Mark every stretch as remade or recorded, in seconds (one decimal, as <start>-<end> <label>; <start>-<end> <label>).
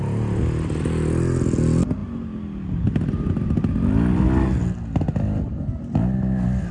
0.0-6.7 recorded